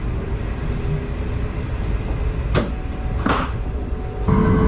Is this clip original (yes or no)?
yes